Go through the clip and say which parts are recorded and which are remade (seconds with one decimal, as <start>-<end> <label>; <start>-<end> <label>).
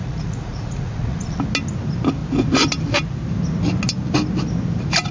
0.0-1.4 remade; 1.4-5.1 recorded